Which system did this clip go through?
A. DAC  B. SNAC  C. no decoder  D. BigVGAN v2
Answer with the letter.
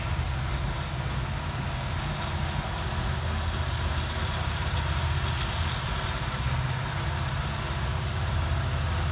C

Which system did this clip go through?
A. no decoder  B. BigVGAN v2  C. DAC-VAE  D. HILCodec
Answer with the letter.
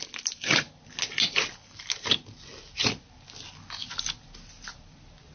A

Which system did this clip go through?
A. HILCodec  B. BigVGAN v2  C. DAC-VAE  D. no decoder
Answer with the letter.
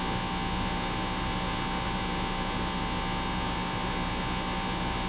D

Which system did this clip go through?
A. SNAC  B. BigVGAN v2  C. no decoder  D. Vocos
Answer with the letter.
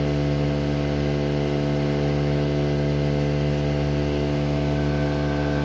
C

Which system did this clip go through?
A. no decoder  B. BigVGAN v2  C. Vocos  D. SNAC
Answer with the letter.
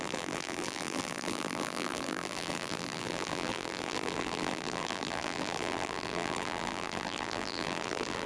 B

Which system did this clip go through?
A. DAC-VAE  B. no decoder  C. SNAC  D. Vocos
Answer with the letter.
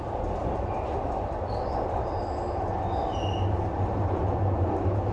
B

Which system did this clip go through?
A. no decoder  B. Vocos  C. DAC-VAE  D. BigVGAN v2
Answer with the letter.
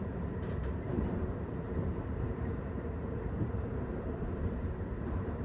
D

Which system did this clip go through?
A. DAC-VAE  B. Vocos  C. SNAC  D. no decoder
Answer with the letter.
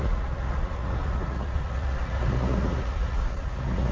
B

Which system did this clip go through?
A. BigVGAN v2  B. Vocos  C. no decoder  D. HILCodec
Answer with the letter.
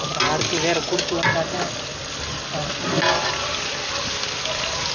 C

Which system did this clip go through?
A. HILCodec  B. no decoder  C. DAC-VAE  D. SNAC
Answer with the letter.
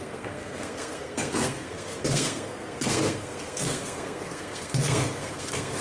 D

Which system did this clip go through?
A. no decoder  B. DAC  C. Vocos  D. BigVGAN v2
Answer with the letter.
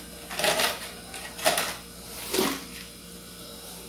A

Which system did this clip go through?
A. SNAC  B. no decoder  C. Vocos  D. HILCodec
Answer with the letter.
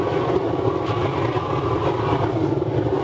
B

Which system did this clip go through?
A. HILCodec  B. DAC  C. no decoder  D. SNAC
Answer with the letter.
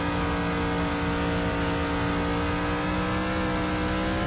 C